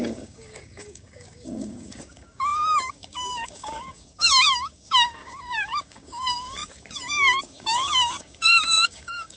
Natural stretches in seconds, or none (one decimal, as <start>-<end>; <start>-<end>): none